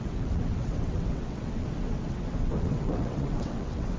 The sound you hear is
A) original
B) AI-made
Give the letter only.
B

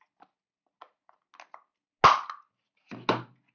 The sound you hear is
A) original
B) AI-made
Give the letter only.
A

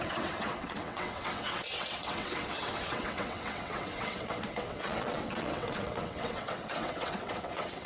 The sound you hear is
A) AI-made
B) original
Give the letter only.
A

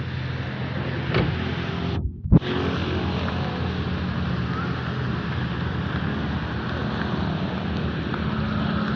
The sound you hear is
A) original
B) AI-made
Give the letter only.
A